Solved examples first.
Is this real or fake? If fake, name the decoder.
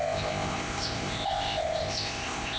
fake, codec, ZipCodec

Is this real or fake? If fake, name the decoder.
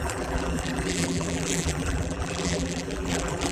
fake, vocoder, BigVGAN v2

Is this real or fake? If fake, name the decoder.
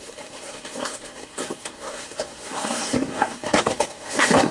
fake, codec, SNAC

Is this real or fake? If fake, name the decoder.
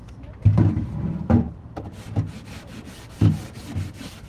fake, vocoder, BigVGAN v2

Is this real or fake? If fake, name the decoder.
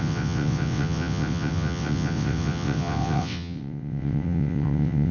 fake, vocoder, WaveNeXt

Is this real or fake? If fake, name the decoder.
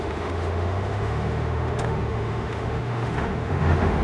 fake, autoencoder, DAC-VAE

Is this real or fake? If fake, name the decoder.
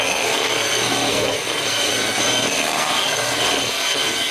fake, codec, SNAC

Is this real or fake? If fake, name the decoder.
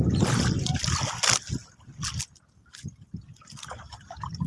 real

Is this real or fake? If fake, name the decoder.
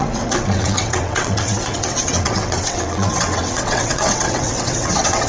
fake, vocoder, WaveNeXt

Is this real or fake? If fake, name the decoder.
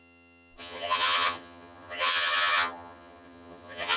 fake, vocoder, HiFi-GAN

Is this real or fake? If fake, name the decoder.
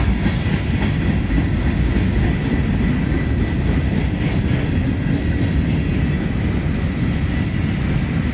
real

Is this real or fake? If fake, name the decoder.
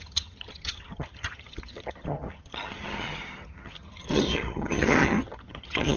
fake, vocoder, HiFi-GAN